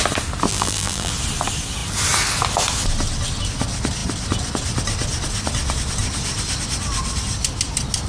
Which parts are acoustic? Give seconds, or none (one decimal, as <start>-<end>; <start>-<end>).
0.0-0.5; 1.1-8.1